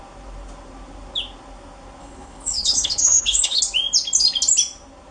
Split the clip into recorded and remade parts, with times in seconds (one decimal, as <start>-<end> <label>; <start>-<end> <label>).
0.0-2.0 recorded; 2.0-3.6 remade; 3.6-5.1 recorded